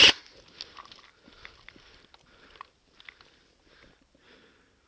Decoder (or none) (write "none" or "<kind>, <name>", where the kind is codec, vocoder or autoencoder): none